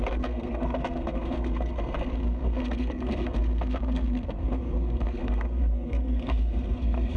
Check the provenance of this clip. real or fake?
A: fake